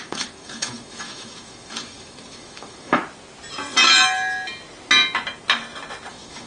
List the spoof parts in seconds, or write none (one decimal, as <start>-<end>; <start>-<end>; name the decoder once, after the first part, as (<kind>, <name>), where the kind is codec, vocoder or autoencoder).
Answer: 0.0-3.0 (autoencoder, DAC-VAE); 6.1-6.5